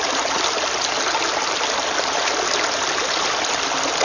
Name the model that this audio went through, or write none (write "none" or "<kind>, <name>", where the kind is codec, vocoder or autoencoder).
none